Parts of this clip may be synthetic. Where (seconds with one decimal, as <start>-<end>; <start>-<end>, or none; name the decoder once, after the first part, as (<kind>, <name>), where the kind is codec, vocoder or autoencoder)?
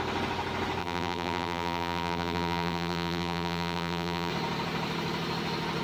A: 0.8-4.3 (vocoder, BigVGAN v2)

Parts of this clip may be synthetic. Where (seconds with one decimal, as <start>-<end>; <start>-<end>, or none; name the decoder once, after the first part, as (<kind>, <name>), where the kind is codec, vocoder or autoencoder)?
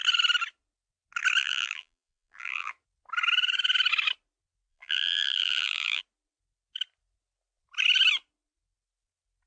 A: 1.4-2.7 (vocoder, BigVGAN v2); 4.7-6.0